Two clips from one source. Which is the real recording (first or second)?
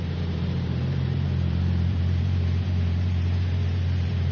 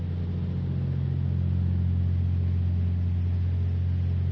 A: second